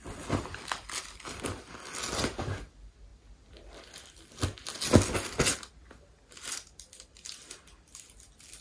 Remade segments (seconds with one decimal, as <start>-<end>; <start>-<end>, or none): none